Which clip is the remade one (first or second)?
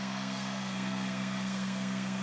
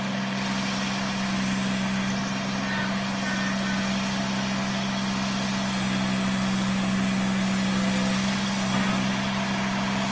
first